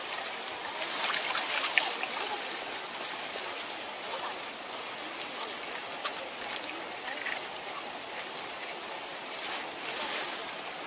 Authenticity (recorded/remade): recorded